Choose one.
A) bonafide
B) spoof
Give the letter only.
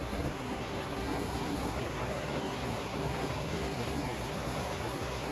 B